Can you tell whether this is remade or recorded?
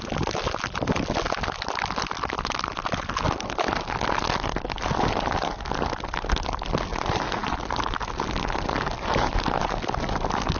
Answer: recorded